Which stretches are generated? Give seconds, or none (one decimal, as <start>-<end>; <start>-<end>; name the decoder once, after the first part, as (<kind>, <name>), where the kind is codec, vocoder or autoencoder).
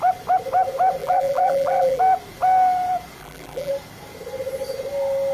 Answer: 1.0-2.0 (vocoder, BigVGAN v2); 3.2-3.7